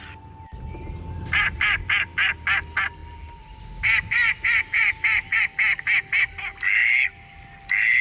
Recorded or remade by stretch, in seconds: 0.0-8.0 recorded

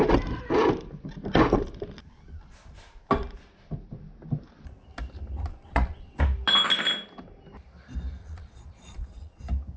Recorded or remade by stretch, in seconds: 0.0-5.5 recorded; 5.5-6.2 remade; 6.2-8.2 recorded; 8.2-9.4 remade; 9.4-9.8 recorded

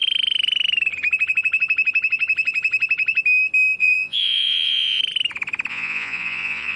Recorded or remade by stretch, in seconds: 0.0-3.8 recorded; 3.8-5.0 remade; 5.0-5.7 recorded; 5.7-6.8 remade

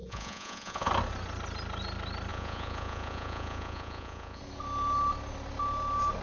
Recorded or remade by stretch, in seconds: 0.0-0.9 remade; 0.9-2.3 recorded; 2.3-4.4 remade; 4.4-6.2 recorded

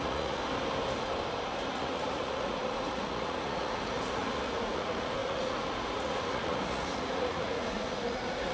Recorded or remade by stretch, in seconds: 0.0-0.4 remade; 0.4-1.7 recorded; 1.7-8.5 remade